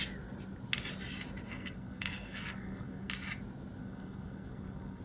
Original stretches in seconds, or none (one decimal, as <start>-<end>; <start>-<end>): 0.0-1.5; 3.1-3.8